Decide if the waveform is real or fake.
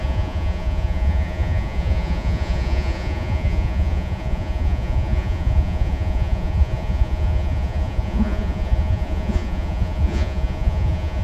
fake